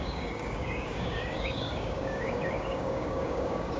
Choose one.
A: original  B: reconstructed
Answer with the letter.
B